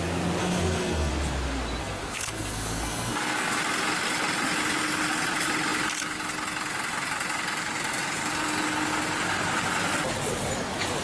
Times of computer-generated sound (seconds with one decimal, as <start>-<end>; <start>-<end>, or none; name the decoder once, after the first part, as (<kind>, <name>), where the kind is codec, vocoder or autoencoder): 0.4-1.1 (codec, SNAC); 1.8-3.6